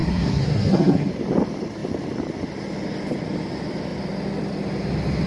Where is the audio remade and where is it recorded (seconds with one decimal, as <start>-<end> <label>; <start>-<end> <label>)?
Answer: 0.0-1.1 remade; 1.1-5.3 recorded